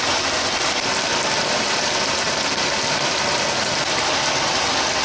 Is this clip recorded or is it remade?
recorded